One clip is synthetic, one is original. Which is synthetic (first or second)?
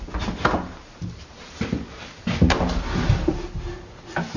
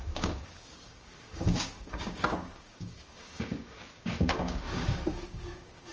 second